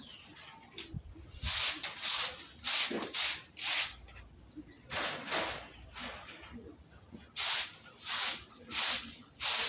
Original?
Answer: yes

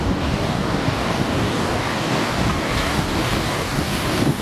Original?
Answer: no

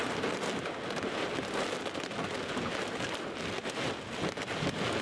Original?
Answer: yes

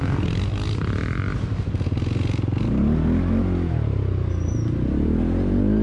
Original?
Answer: yes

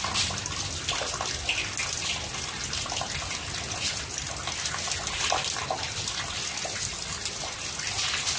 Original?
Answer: yes